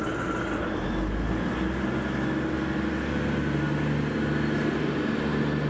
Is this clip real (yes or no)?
yes